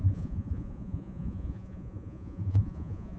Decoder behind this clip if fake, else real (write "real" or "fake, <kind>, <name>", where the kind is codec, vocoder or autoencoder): fake, vocoder, Vocos